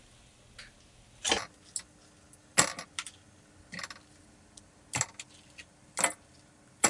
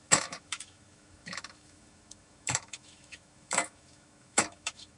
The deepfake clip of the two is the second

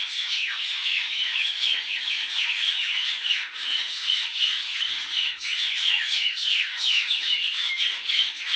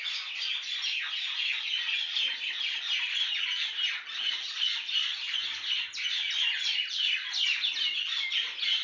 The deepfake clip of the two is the first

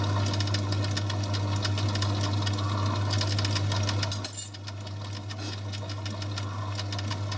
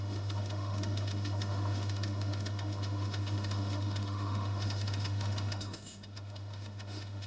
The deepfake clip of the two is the second